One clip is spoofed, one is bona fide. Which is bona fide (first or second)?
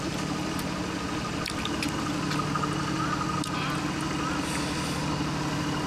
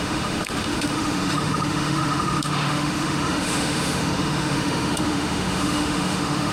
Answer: first